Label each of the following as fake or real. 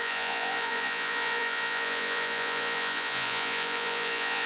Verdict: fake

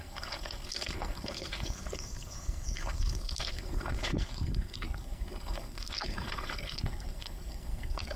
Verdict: fake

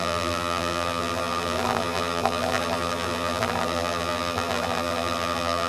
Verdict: fake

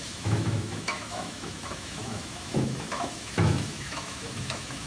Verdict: fake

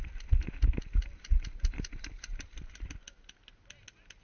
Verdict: real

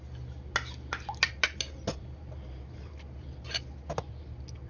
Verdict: real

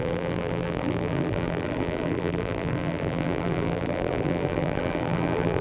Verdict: fake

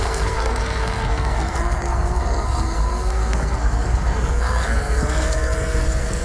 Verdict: fake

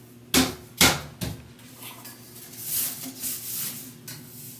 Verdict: real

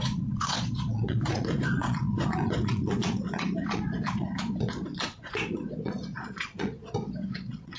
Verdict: fake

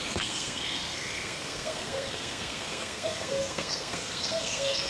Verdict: fake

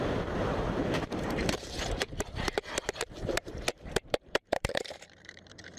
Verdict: fake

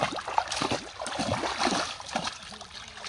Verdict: real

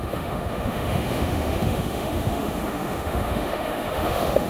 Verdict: fake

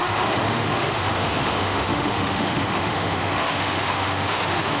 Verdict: fake